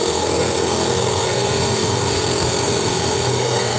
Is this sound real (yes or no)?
no